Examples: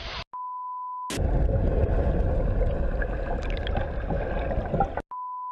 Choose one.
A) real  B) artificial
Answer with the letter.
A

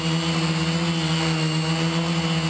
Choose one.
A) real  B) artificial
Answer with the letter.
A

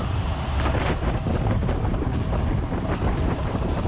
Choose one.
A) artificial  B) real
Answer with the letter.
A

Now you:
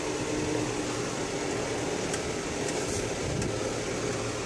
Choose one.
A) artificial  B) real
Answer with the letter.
B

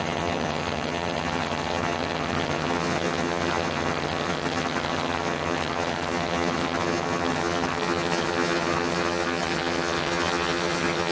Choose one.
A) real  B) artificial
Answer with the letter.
B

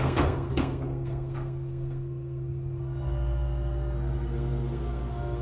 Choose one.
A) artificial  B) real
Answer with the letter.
A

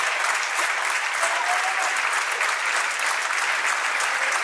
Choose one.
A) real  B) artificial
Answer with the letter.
A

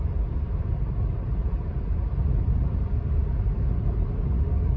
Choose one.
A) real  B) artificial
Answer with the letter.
A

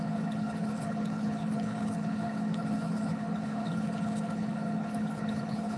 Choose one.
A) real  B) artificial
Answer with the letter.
B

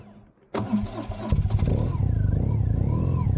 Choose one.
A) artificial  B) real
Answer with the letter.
B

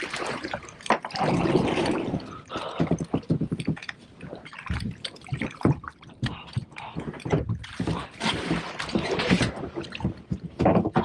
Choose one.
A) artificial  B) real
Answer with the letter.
A